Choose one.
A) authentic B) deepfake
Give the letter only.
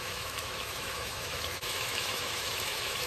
B